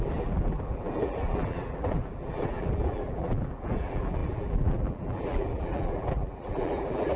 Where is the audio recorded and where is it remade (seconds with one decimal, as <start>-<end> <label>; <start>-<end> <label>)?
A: 0.0-7.2 remade